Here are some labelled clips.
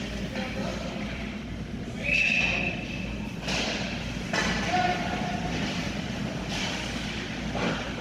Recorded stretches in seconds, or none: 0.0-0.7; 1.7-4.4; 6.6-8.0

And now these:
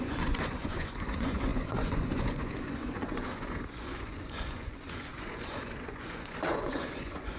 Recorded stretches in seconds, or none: none

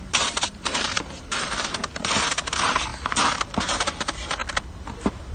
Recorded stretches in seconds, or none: 2.9-3.7; 4.4-5.3

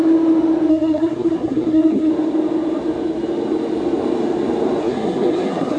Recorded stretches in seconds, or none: 0.0-0.7; 2.1-4.8

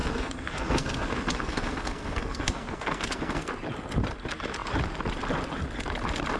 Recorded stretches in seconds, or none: 3.5-6.4

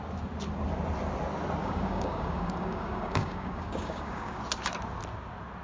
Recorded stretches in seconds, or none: 0.0-1.6; 4.4-5.6

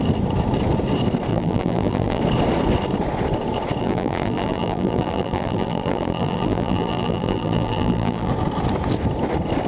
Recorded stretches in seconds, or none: 0.0-1.3; 2.2-3.8; 8.3-9.7

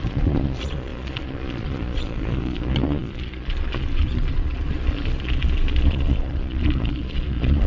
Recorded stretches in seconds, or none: none